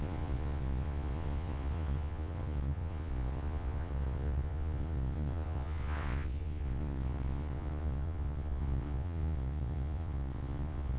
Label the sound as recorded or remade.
remade